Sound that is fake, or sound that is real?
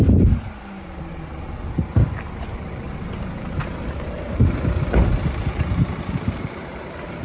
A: fake